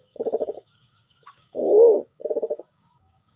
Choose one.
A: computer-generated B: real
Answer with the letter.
A